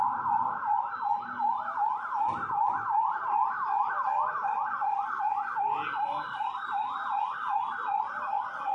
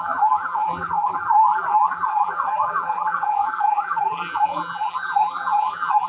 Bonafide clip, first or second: first